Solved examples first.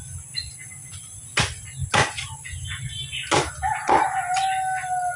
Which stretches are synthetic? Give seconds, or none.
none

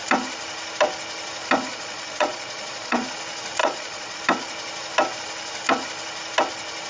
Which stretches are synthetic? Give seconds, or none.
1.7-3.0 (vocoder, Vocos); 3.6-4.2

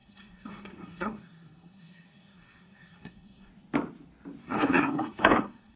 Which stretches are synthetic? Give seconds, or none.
0.0-3.5 (codec, SNAC); 4.4-5.8

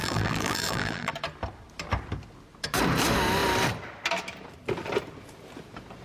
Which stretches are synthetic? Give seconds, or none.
0.0-1.1 (vocoder, BigVGAN v2)

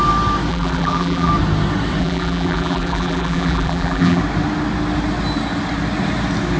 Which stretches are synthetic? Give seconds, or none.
0.5-1.3 (vocoder, BigVGAN v2); 2.0-4.2

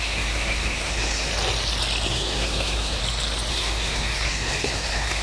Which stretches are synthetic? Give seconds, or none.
0.0-1.3 (codec, SNAC); 2.1-3.0; 3.5-5.2